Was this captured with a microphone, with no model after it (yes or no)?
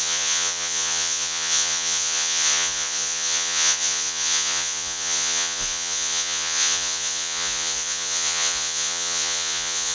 no